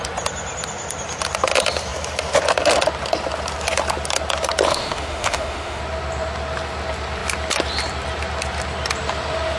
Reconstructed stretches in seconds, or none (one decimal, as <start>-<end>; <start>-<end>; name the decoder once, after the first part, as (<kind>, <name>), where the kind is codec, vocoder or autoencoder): 4.7-5.8 (autoencoder, DAC-VAE)